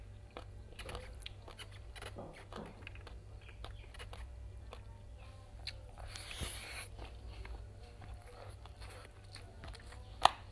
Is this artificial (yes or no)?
no